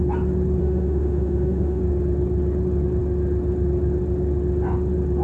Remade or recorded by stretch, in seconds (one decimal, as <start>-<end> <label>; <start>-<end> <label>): 0.0-0.6 recorded; 0.6-1.8 remade; 1.8-5.2 recorded